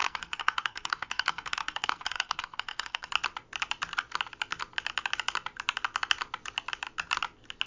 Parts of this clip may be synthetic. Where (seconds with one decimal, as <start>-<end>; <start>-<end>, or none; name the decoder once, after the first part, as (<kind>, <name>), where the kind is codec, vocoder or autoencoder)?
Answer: 0.0-3.1 (codec, SNAC)